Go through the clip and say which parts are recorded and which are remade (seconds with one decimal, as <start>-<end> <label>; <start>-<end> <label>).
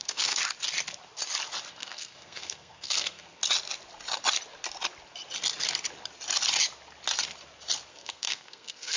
0.0-0.4 remade; 0.4-1.7 recorded; 1.7-3.4 remade; 3.4-7.9 recorded; 7.9-9.0 remade